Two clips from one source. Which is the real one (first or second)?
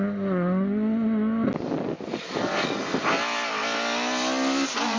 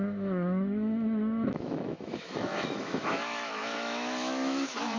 first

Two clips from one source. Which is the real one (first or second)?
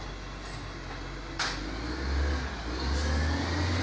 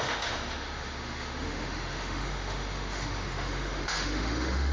first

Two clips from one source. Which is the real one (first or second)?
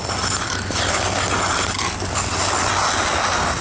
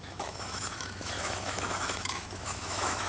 first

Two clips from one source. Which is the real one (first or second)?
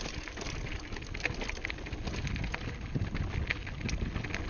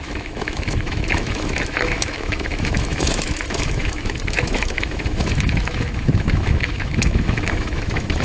first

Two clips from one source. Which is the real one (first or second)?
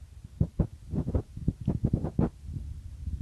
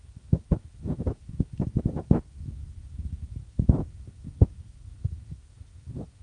first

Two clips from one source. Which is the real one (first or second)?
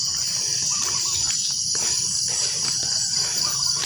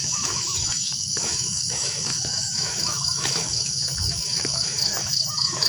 first